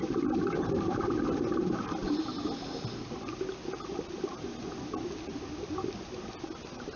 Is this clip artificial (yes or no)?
no